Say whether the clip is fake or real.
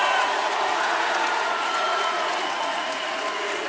fake